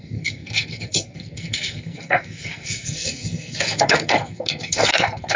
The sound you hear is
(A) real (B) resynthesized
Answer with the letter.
B